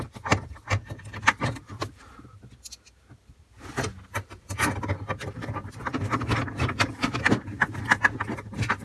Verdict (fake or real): real